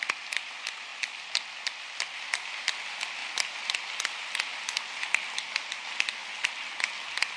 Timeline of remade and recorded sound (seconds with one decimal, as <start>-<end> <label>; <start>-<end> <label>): 0.0-7.4 recorded

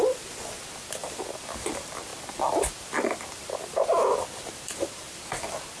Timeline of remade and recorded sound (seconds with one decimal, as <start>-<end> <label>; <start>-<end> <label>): 0.0-5.8 recorded

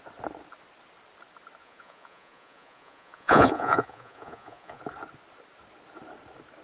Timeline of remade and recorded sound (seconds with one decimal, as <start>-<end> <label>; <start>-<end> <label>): 0.0-1.6 recorded; 1.6-4.8 remade; 4.8-6.6 recorded

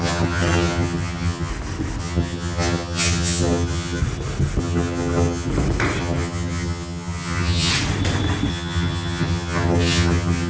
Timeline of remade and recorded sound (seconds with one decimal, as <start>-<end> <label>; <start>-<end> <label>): 0.0-1.5 remade; 1.5-2.0 recorded; 2.0-4.0 remade; 4.0-4.6 recorded; 4.6-5.5 remade; 5.5-6.0 recorded; 6.0-7.7 remade; 7.7-8.5 recorded; 8.5-10.5 remade

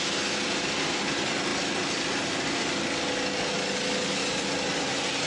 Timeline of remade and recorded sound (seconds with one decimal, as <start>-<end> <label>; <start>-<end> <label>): 0.0-5.3 recorded

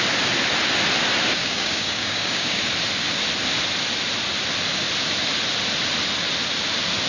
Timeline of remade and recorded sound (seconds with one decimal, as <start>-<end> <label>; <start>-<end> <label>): 0.0-1.4 recorded; 1.4-2.6 remade; 2.6-7.1 recorded

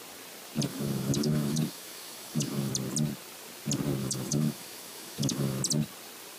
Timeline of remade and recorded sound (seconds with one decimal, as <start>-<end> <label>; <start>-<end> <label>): 0.0-0.7 recorded; 0.7-2.7 remade; 2.7-4.0 recorded; 4.0-5.6 remade; 5.6-6.4 recorded